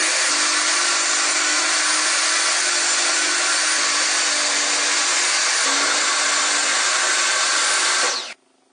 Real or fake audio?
real